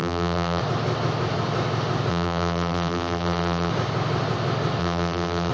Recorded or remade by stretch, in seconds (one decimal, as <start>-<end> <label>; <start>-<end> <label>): 0.0-0.6 remade; 0.6-2.1 recorded; 2.1-3.7 remade; 3.7-4.8 recorded; 4.8-5.5 remade